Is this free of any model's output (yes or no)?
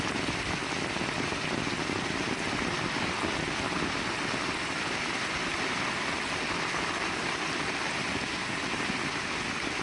yes